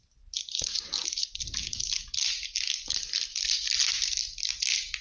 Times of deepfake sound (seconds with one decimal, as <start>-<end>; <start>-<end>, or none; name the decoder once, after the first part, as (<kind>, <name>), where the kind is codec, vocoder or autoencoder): none